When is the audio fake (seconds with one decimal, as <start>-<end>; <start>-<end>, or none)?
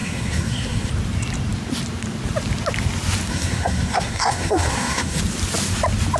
0.0-0.9; 3.3-5.2